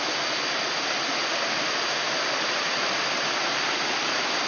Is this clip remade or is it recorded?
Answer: recorded